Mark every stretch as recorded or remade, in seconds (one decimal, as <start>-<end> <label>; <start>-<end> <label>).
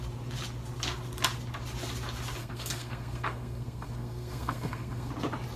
0.0-2.4 recorded; 2.4-5.1 remade; 5.1-5.6 recorded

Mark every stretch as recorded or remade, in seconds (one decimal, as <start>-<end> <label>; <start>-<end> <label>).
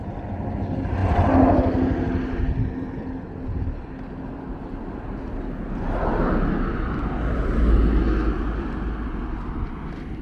0.0-10.2 recorded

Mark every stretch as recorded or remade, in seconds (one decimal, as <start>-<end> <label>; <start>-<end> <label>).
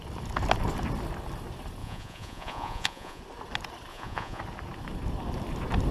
0.0-1.8 recorded; 1.8-3.2 remade; 3.2-3.9 recorded; 3.9-4.4 remade; 4.4-5.9 recorded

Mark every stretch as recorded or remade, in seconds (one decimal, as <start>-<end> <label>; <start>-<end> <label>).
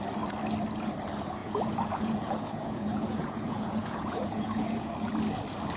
0.0-1.4 recorded; 1.4-4.9 remade; 4.9-5.8 recorded